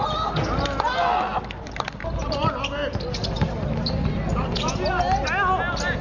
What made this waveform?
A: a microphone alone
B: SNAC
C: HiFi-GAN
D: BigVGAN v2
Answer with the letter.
A